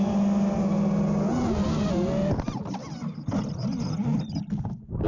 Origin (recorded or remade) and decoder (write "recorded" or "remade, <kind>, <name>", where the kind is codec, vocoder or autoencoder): recorded